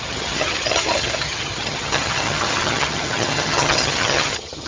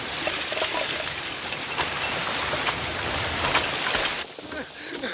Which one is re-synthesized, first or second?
first